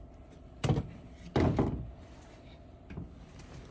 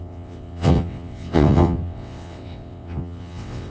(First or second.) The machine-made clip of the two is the second